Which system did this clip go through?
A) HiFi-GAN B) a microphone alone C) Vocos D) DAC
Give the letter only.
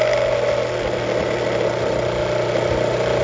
B